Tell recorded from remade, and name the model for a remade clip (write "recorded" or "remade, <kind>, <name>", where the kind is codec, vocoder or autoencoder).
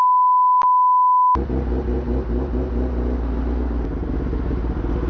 recorded